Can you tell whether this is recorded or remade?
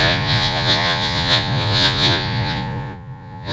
remade